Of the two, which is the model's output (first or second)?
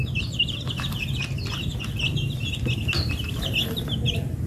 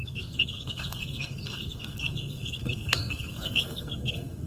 second